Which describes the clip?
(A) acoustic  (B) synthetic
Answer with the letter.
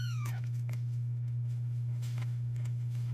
B